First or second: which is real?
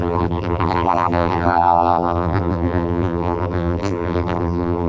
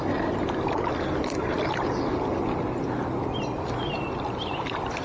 second